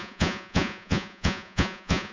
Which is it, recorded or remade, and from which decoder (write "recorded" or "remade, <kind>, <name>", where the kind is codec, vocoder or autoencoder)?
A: remade, vocoder, Vocos